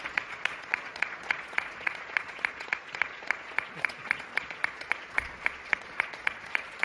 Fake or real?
fake